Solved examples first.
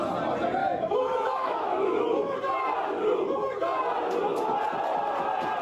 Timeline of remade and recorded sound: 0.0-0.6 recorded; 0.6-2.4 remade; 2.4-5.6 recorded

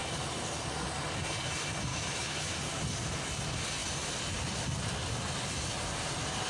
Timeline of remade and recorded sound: 0.0-1.9 recorded; 1.9-2.6 remade; 2.6-6.5 recorded

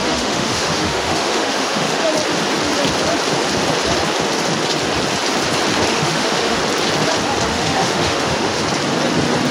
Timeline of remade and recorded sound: 0.0-2.1 remade; 2.1-5.9 recorded; 5.9-6.6 remade; 6.6-7.5 recorded; 7.5-8.6 remade; 8.6-9.5 recorded

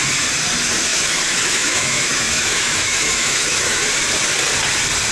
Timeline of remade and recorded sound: 0.0-0.9 recorded; 0.9-3.8 remade; 3.8-5.1 recorded

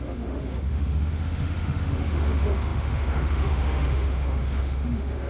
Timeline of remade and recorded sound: 0.0-5.3 remade

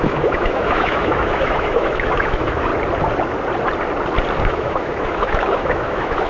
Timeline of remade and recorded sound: 0.0-2.7 remade; 2.7-4.4 recorded; 4.4-6.3 remade

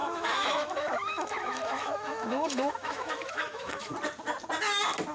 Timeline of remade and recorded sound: 0.0-3.9 remade; 3.9-5.1 recorded